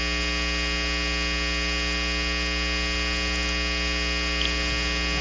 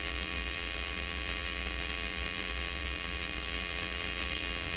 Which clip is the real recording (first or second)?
first